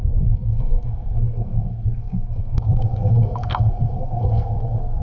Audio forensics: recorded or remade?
remade